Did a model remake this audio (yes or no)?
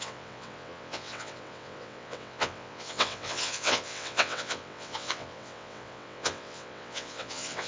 yes